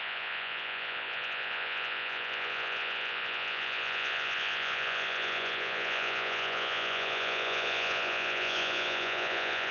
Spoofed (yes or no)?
yes